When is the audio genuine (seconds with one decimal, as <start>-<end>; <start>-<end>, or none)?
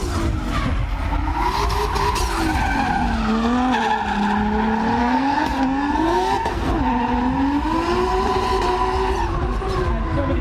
0.0-5.0; 6.7-10.4